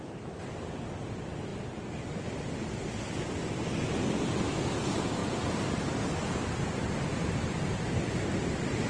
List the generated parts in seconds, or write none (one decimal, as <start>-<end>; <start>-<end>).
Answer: 0.0-8.9